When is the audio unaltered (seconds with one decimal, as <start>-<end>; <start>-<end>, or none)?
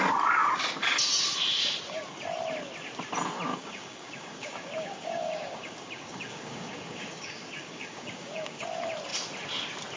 0.0-3.5; 8.6-10.0